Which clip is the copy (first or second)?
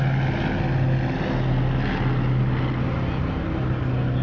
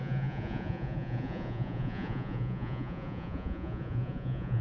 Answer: second